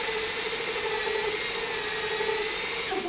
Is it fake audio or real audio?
real